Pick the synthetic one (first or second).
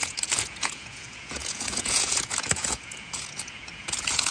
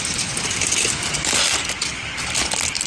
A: first